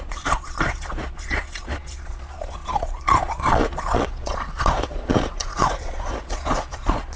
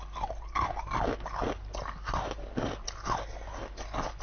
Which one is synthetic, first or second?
first